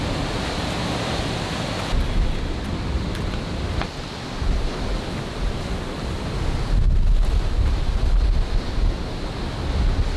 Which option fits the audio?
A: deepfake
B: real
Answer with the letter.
B